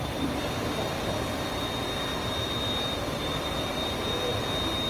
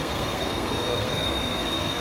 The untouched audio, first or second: first